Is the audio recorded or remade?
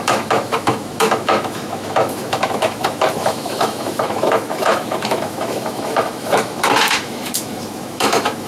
remade